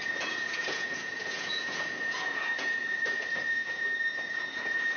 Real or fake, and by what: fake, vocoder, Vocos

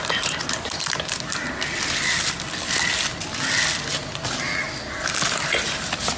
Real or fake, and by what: real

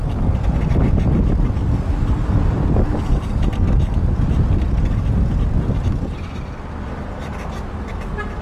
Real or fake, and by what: real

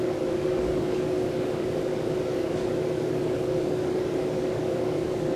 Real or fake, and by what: fake, codec, DAC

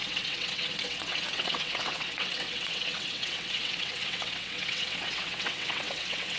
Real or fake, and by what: fake, vocoder, WaveNeXt